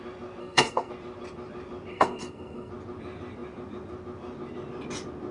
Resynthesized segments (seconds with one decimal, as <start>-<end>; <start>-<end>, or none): 0.4-0.9; 1.9-2.7